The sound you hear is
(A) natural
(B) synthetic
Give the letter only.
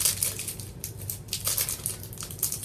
A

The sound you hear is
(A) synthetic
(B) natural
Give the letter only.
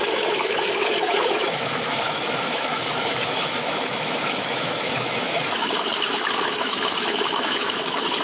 A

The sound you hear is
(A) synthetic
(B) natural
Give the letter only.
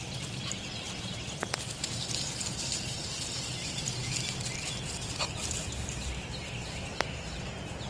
B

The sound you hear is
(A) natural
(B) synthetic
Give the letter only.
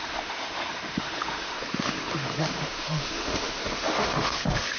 B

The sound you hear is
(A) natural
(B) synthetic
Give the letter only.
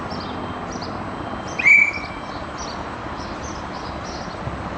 A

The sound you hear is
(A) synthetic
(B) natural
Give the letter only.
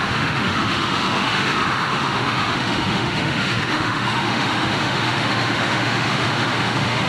A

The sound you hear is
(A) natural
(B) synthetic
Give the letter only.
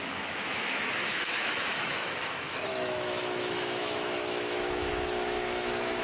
B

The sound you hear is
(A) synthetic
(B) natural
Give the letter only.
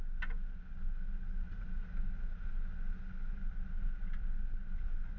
B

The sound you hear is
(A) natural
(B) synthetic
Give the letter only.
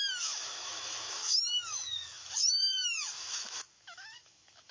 B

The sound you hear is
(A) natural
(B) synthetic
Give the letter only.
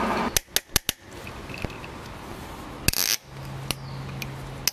A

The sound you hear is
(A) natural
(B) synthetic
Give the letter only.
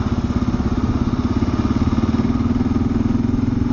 A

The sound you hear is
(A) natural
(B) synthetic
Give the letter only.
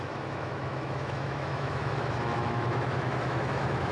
B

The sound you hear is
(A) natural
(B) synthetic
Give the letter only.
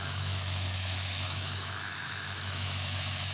B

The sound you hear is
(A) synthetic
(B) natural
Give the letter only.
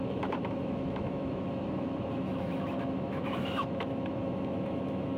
A